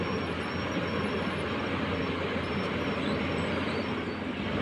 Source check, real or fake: fake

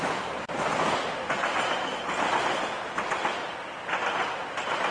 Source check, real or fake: real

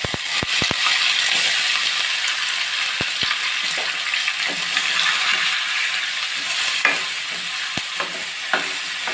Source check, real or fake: real